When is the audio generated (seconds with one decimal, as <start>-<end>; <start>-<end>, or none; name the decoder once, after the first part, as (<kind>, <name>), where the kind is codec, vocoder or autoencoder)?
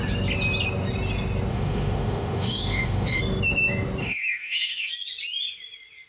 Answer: 1.5-3.2 (autoencoder, DAC-VAE); 4.0-4.9